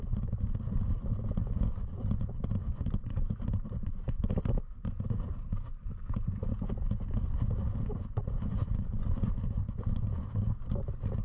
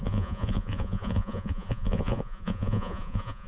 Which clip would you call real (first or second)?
first